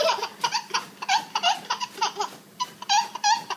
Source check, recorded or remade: recorded